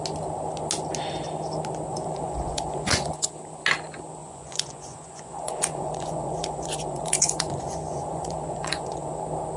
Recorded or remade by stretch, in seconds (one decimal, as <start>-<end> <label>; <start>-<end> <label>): 0.0-1.9 recorded; 1.9-3.4 remade; 3.4-4.2 recorded; 4.2-9.2 remade; 9.2-9.6 recorded